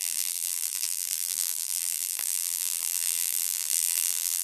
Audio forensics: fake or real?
fake